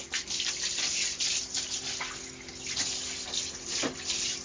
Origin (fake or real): real